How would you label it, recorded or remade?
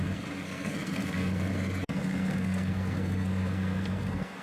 remade